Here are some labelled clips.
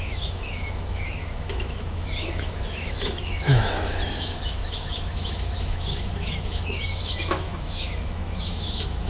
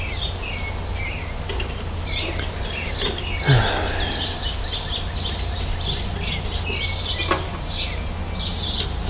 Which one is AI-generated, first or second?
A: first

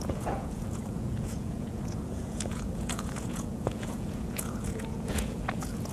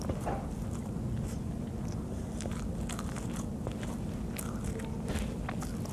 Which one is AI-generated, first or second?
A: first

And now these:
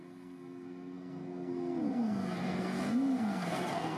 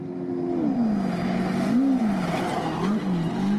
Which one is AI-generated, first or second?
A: first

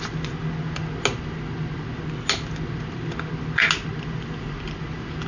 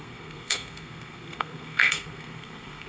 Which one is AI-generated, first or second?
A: second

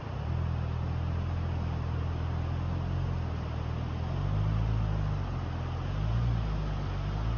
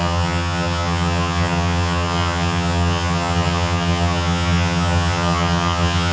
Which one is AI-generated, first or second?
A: second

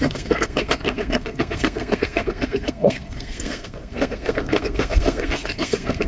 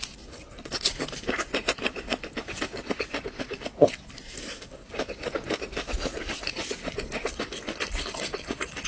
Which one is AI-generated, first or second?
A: first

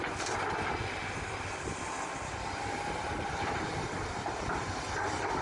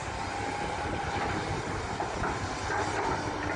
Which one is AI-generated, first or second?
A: first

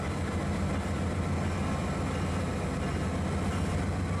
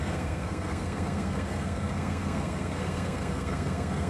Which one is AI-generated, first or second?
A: second